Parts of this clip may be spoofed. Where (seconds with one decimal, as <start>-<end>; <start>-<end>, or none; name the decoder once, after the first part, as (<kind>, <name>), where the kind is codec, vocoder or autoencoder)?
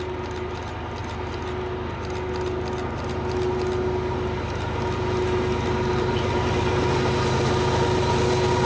none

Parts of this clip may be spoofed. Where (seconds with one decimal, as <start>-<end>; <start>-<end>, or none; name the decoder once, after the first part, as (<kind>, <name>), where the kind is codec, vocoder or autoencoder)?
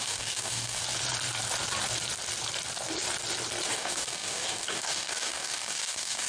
0.0-0.8 (codec, DAC); 3.7-6.3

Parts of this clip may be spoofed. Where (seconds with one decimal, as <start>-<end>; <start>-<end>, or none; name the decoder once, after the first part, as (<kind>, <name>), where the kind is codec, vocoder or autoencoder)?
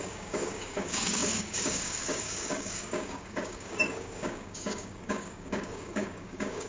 0.0-6.7 (codec, DAC)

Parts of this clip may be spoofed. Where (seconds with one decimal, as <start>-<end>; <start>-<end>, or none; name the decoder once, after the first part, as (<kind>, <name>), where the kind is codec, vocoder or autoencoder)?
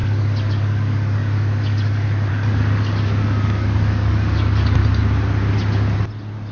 0.0-4.8 (codec, DAC)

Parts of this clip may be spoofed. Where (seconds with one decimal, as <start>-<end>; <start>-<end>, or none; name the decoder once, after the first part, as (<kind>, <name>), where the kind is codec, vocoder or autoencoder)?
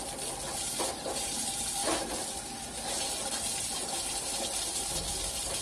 none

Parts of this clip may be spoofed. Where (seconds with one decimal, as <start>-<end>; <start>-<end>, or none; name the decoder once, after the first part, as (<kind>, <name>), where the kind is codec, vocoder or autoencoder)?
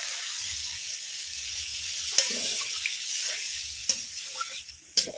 0.0-3.8 (codec, DAC); 4.7-5.2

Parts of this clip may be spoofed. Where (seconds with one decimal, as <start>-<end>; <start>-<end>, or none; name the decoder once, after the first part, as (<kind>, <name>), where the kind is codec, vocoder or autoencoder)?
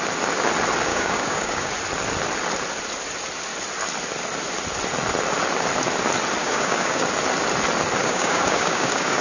0.9-1.7 (codec, DAC); 6.4-7.0; 8.0-9.2